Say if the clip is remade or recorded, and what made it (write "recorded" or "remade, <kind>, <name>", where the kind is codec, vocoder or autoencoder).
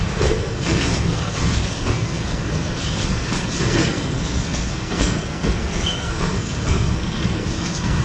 remade, codec, SNAC